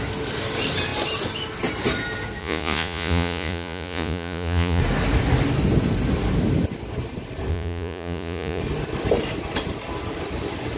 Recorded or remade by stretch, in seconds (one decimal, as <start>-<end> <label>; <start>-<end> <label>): 0.0-2.4 recorded; 2.4-4.8 remade; 4.8-7.5 recorded; 7.5-8.6 remade; 8.6-10.8 recorded